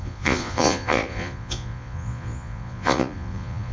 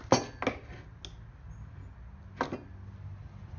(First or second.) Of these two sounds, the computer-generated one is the first